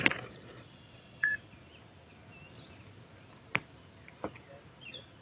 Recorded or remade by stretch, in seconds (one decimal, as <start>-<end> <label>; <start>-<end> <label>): 0.0-1.7 remade; 1.7-4.8 recorded; 4.8-5.2 remade